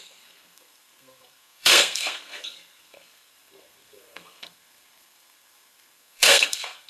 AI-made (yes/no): yes